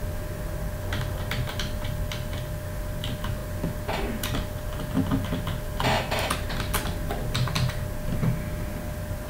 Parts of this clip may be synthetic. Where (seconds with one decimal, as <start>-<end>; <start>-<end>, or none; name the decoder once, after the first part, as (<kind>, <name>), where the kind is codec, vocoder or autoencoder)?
none